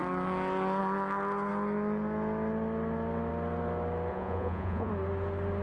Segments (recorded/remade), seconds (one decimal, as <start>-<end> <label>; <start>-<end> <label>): 0.0-4.1 recorded; 4.1-4.9 remade; 4.9-5.6 recorded